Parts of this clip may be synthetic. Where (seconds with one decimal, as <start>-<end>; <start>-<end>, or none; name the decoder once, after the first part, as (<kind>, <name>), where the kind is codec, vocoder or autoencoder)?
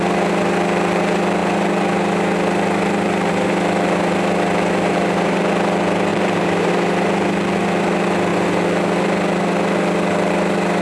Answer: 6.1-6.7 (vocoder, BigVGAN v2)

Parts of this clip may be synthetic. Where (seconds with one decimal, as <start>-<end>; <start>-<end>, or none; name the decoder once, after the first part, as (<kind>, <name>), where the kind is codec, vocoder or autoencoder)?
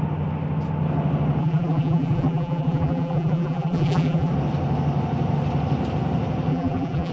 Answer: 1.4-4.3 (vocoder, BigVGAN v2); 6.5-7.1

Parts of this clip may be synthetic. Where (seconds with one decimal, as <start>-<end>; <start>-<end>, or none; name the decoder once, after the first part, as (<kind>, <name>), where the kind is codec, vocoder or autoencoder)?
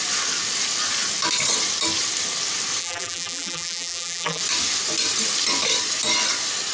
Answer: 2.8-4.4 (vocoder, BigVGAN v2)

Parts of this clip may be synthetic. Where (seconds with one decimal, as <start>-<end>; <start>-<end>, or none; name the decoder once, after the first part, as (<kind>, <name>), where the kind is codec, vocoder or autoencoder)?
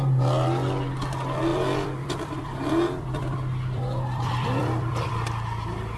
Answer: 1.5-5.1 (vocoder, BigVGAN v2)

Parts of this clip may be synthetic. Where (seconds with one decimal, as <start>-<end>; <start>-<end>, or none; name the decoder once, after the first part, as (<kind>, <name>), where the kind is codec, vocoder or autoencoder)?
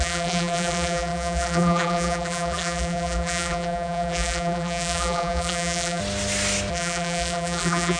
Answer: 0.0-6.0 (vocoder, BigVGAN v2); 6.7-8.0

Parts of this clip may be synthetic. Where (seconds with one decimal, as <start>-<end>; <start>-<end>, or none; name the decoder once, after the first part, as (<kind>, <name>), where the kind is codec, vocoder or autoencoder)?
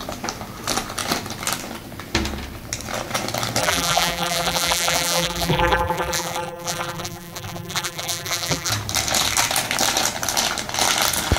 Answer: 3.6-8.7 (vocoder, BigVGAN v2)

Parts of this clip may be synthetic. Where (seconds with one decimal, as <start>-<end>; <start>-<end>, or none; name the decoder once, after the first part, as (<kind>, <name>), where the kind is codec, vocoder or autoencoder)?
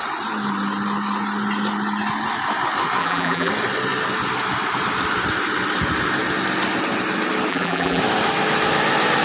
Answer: 3.0-3.5 (vocoder, BigVGAN v2); 7.5-8.0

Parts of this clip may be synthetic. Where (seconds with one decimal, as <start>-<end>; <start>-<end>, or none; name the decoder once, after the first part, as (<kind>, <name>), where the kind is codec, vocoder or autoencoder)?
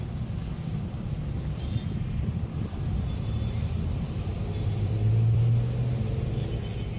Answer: 4.3-5.4 (vocoder, BigVGAN v2)